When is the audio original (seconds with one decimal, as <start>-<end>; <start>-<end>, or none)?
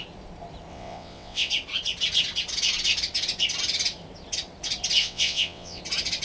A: 0.0-0.7; 1.5-5.0; 5.8-6.2